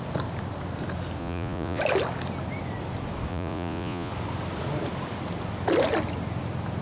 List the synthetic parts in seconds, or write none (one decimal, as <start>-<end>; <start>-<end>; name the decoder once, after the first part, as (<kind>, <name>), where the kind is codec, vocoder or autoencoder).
1.2-1.8 (vocoder, Vocos); 3.3-4.1

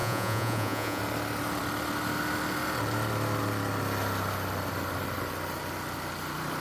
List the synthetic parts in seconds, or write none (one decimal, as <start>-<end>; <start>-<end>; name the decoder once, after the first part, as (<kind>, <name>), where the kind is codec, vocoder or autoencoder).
0.0-1.0 (vocoder, Vocos)

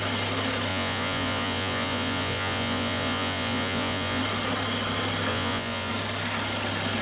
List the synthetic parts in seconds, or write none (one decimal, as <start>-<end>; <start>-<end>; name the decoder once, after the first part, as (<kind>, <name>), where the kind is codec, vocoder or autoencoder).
0.7-4.2 (vocoder, Vocos); 5.3-5.9